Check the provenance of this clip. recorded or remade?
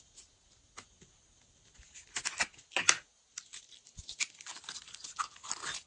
recorded